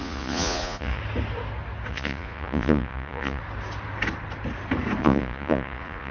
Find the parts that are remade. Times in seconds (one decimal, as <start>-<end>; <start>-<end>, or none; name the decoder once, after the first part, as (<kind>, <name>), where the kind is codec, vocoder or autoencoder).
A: 0.0-1.0 (vocoder, Vocos); 1.9-3.4; 5.0-6.1